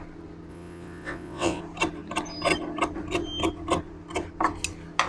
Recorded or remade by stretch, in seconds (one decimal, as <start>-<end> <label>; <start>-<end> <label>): 0.0-0.5 recorded; 0.5-1.6 remade; 1.6-5.1 recorded

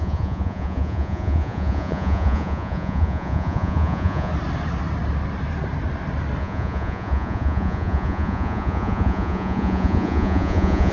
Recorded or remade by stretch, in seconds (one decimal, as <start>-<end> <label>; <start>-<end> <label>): 0.0-4.3 remade; 4.3-6.4 recorded; 6.4-10.9 remade

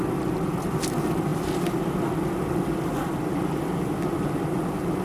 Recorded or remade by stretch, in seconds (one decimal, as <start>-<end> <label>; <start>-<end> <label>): 0.0-5.0 recorded

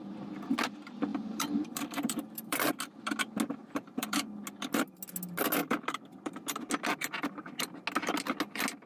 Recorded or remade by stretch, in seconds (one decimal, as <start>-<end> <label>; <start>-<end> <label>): 0.0-1.1 recorded; 1.1-2.7 remade; 2.7-3.6 recorded; 3.6-4.4 remade; 4.4-5.6 recorded; 5.6-6.3 remade; 6.3-8.9 recorded

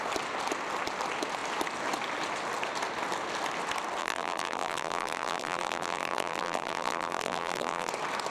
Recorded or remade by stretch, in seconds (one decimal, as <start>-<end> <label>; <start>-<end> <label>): 0.0-4.0 recorded; 4.0-7.9 remade; 7.9-8.3 recorded

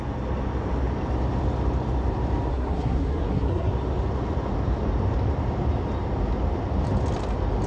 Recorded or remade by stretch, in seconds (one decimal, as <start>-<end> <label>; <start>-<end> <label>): 0.0-2.5 recorded; 2.5-3.7 remade; 3.7-7.7 recorded